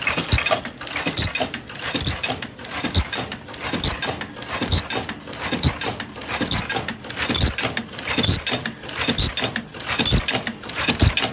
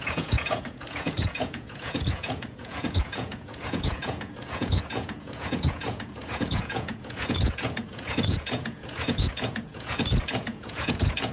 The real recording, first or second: first